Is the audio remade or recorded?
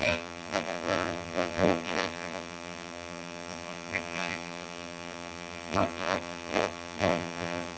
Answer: remade